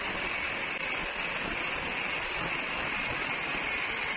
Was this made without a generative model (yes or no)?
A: yes